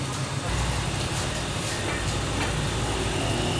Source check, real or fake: real